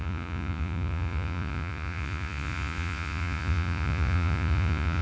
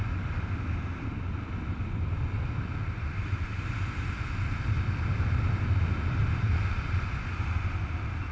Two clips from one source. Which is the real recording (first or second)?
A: second